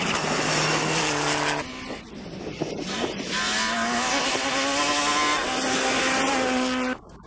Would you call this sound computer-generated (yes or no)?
no